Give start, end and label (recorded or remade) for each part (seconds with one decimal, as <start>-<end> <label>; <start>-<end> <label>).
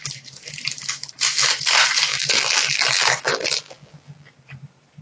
0.0-2.1 recorded; 2.1-4.3 remade; 4.3-5.0 recorded